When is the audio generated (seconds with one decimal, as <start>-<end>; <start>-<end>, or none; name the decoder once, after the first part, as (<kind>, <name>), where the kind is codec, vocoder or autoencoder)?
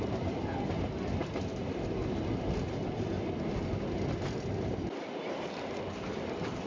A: none